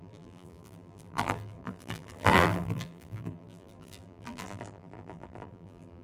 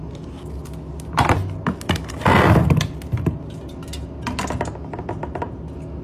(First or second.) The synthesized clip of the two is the first